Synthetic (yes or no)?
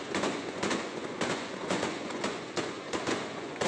yes